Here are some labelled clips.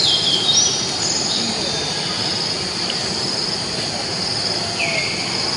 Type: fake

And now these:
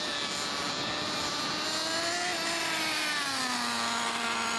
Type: real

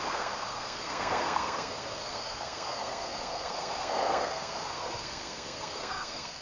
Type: fake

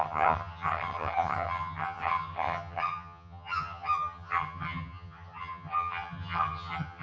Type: fake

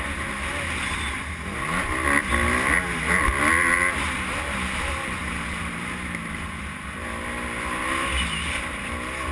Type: real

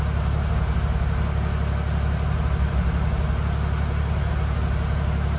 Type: real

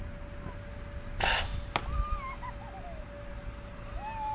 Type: real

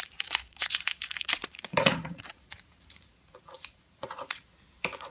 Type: fake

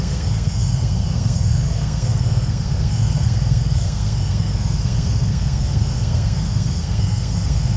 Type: fake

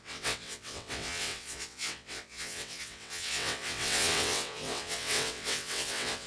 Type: fake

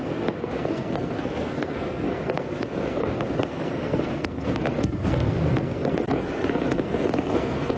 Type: fake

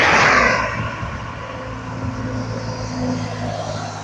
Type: real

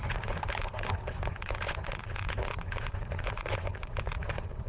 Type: fake